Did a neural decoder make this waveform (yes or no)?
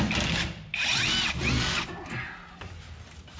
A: no